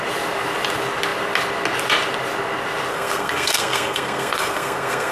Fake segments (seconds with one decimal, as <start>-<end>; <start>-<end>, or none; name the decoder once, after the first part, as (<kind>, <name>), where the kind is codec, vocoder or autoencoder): 2.9-5.1 (codec, SNAC)